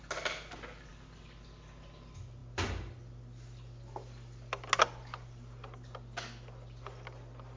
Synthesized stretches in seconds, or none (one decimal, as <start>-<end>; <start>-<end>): none